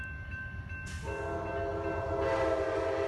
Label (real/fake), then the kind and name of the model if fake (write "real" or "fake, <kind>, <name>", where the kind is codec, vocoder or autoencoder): real